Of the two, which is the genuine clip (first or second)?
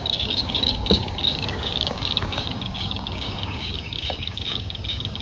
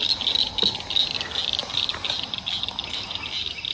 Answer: second